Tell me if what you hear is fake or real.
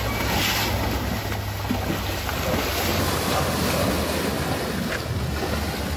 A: real